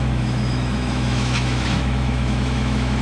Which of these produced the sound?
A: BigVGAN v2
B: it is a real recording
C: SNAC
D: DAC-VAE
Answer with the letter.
D